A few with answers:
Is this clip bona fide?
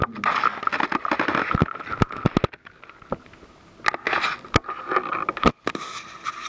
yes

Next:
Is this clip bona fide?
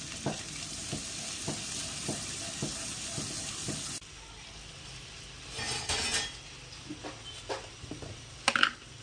yes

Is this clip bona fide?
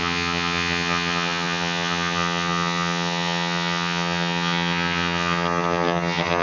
no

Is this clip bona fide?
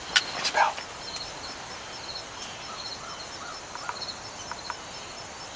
yes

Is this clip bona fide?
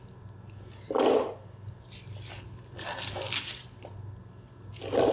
yes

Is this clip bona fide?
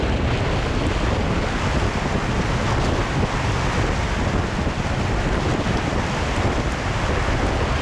yes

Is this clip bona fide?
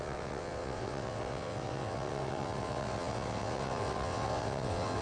no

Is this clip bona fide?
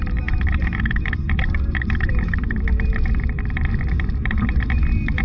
no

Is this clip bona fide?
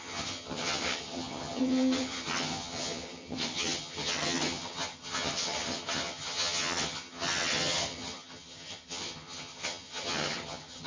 no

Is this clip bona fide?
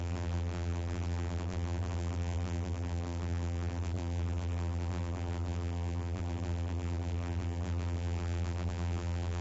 no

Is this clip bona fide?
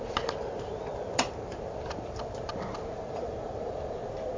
no